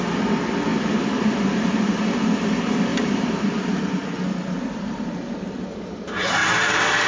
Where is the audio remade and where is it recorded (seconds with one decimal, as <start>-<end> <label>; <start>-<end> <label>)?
0.0-0.7 recorded; 0.7-1.8 remade; 1.8-2.9 recorded; 2.9-5.9 remade; 5.9-6.4 recorded; 6.4-7.1 remade